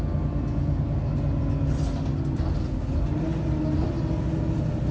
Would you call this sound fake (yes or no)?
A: no